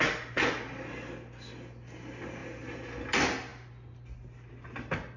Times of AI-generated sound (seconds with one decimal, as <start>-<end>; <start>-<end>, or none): none